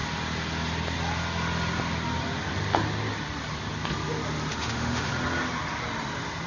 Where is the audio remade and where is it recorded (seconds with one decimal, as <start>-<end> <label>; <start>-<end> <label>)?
0.0-4.5 recorded; 4.5-5.1 remade; 5.1-6.5 recorded